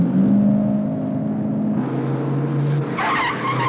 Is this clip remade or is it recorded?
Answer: recorded